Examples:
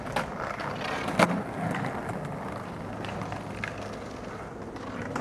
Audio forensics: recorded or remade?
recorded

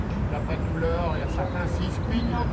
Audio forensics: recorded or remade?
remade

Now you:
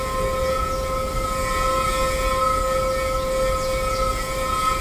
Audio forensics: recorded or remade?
recorded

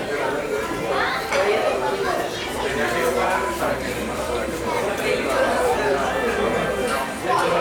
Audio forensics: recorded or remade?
remade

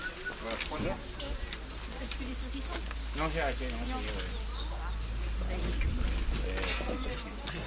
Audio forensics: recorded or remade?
recorded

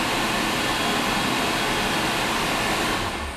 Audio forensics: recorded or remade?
remade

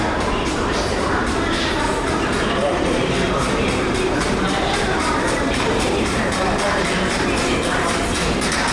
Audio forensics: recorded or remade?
remade